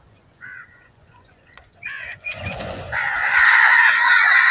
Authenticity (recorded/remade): remade